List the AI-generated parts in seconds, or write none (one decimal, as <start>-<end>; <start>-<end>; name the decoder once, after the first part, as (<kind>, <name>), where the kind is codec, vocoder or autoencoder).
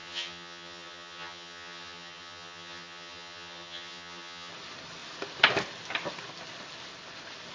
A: 0.0-4.5 (vocoder, HiFi-GAN)